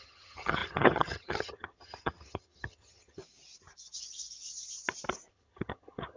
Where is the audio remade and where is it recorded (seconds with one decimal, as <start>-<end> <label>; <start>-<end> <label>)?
0.0-3.2 remade; 3.2-5.3 recorded; 5.3-6.2 remade